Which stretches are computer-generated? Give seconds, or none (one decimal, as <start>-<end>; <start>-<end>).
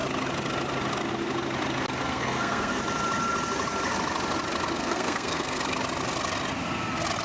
2.1-2.8; 4.8-5.6